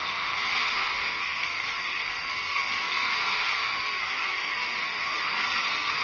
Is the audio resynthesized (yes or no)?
yes